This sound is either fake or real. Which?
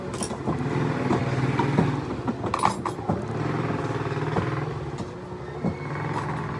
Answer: real